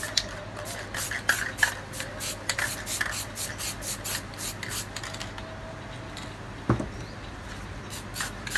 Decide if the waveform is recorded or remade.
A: recorded